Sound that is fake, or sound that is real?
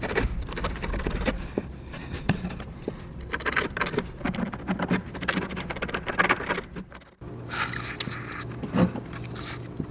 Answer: real